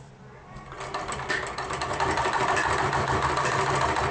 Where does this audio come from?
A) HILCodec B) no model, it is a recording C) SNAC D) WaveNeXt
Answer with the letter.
B